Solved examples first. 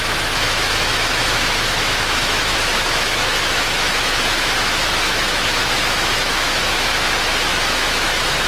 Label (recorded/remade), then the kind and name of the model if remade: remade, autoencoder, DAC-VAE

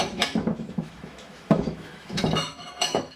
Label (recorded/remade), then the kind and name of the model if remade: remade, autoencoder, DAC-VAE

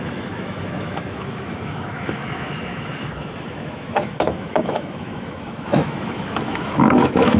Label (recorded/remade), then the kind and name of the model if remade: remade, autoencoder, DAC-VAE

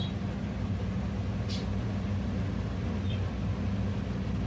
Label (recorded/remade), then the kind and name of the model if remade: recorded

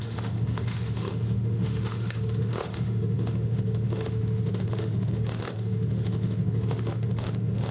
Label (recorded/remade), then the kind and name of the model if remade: remade, autoencoder, DAC-VAE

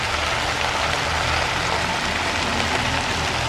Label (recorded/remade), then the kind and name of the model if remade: recorded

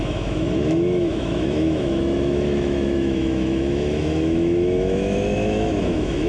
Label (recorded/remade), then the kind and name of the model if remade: remade, autoencoder, DAC-VAE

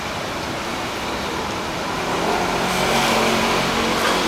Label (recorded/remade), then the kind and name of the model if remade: recorded